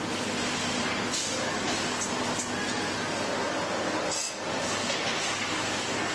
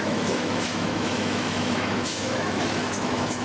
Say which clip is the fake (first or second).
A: second